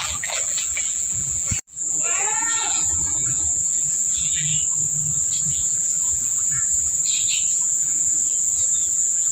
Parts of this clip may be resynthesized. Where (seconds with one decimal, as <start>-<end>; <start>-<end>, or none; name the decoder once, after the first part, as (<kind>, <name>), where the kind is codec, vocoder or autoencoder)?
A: 0.0-4.5 (vocoder, BigVGAN v2); 5.4-7.0; 7.5-9.3